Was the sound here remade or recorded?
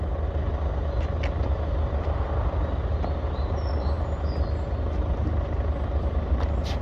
recorded